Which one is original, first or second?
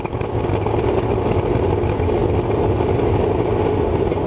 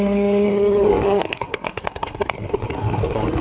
first